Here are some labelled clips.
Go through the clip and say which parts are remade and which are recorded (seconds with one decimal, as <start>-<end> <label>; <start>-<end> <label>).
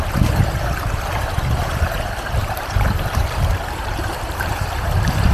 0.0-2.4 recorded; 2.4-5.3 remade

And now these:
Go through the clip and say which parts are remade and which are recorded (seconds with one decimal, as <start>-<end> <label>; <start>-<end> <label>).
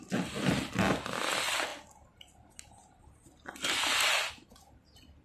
0.0-5.2 recorded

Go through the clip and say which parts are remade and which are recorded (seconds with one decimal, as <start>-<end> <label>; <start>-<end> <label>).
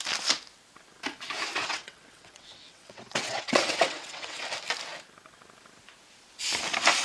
0.0-1.6 recorded; 1.6-4.4 remade; 4.4-7.0 recorded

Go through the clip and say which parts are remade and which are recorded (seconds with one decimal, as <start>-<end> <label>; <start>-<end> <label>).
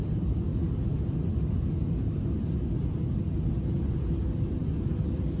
0.0-0.5 remade; 0.5-3.7 recorded; 3.7-5.4 remade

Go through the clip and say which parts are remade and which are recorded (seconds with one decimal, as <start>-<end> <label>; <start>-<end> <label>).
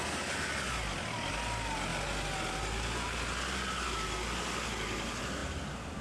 0.0-6.0 recorded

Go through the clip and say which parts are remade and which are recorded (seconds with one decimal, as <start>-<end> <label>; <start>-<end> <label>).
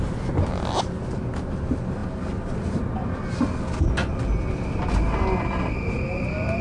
0.0-6.6 recorded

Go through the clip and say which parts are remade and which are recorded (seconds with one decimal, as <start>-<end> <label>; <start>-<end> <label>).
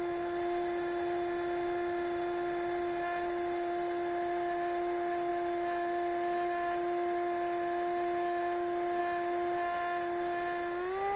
0.0-11.2 recorded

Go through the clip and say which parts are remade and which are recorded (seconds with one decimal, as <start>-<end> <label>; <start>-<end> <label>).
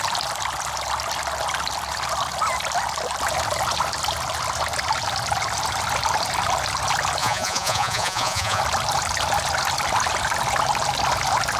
0.0-7.2 recorded; 7.2-8.6 remade; 8.6-11.6 recorded